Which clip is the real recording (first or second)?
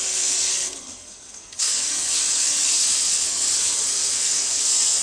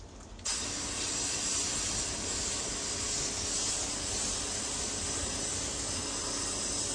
second